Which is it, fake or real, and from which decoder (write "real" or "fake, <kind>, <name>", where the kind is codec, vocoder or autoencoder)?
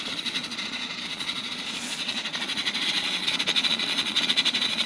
fake, vocoder, Vocos